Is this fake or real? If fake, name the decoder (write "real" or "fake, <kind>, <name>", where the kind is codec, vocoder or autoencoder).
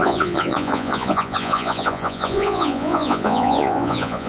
fake, vocoder, Vocos